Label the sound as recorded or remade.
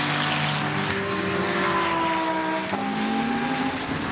recorded